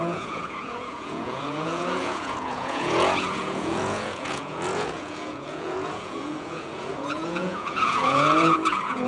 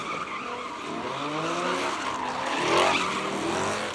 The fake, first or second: first